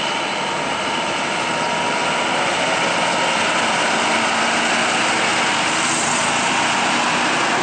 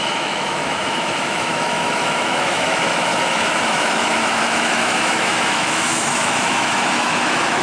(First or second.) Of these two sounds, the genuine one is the first